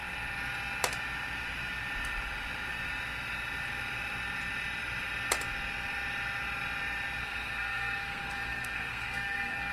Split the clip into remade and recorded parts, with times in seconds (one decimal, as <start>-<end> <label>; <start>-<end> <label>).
0.0-7.2 recorded; 7.2-9.7 remade